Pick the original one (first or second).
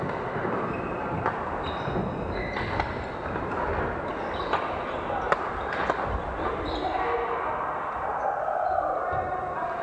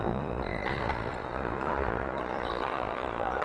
first